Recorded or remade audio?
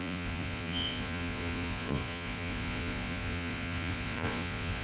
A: remade